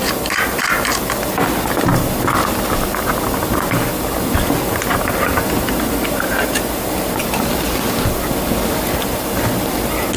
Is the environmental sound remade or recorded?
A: recorded